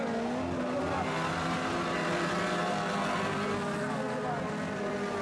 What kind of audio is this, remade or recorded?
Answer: recorded